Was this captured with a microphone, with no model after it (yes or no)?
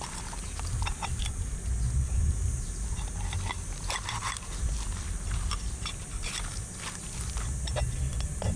yes